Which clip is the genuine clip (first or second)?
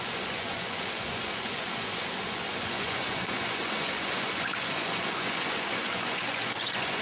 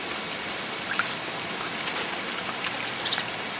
second